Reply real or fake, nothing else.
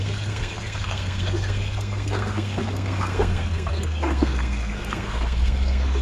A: fake